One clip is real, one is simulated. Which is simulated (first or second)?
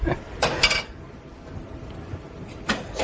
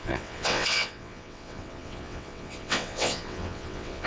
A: second